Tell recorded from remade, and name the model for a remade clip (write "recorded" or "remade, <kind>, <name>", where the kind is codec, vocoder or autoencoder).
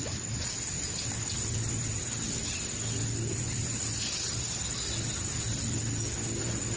recorded